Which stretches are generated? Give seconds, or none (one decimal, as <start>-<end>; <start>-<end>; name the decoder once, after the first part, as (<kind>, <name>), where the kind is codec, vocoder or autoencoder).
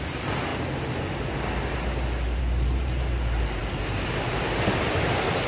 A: none